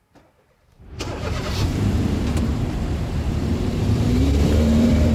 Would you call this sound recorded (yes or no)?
no